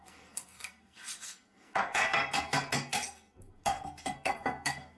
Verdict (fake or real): fake